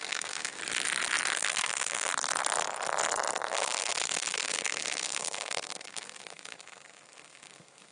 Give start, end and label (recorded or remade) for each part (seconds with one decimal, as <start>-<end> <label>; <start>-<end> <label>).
0.0-0.6 remade; 0.6-1.3 recorded; 1.3-2.1 remade; 2.1-3.5 recorded; 3.5-7.9 remade